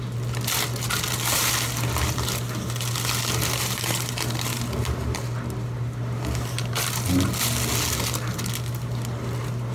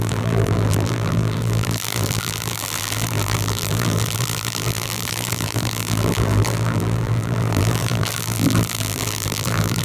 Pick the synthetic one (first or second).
second